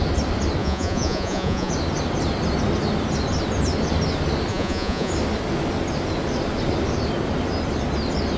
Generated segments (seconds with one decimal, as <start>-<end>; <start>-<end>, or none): 0.6-1.7; 4.5-5.1